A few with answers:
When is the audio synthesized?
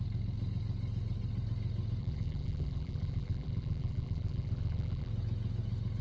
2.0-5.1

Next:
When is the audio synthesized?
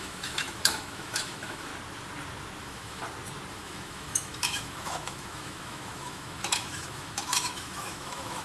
0.0-1.7; 2.6-3.0; 3.5-8.4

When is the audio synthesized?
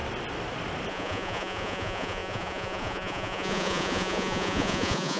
0.9-5.2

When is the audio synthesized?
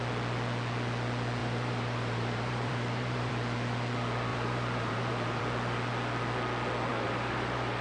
1.4-3.3; 4.3-5.4; 6.9-7.8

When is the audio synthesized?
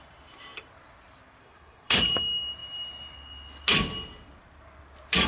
1.4-2.0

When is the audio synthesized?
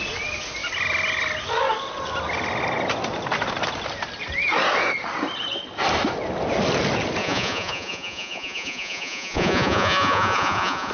7.2-10.9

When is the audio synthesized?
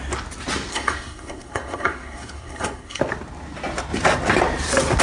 0.7-3.0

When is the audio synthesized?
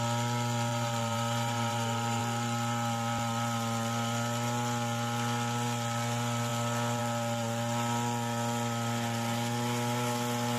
0.7-2.2